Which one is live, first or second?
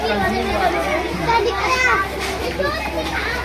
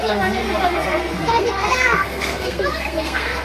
first